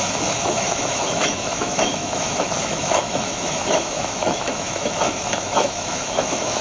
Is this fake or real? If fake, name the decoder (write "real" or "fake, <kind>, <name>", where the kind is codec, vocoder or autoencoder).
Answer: fake, autoencoder, DAC-VAE